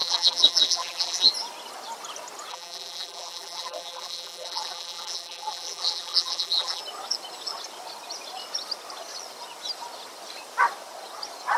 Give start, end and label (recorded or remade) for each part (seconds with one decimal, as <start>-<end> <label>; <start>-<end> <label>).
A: 0.0-1.3 remade; 1.3-2.5 recorded; 2.5-6.8 remade; 6.8-11.6 recorded